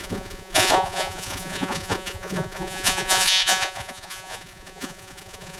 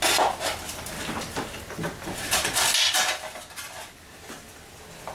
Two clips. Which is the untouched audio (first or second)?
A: second